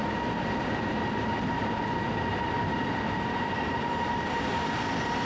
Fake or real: real